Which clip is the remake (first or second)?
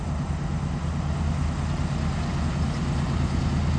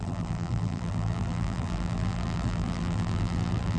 second